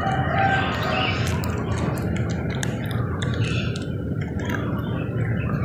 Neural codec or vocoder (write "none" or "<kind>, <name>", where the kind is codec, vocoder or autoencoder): none